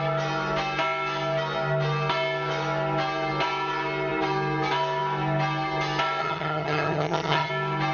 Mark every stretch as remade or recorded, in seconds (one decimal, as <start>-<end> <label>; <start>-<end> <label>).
0.0-6.2 recorded; 6.2-7.5 remade; 7.5-7.9 recorded